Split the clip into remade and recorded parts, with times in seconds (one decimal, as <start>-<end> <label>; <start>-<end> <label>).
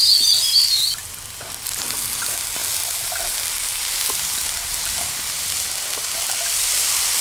0.0-7.2 recorded